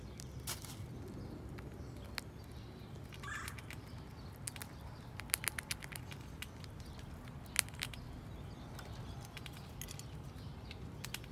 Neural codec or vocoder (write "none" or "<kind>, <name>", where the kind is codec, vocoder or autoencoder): none